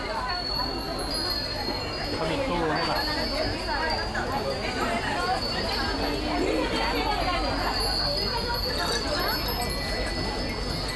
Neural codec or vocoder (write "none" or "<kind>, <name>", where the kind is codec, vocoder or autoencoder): none